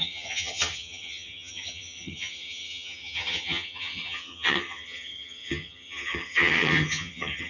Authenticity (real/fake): fake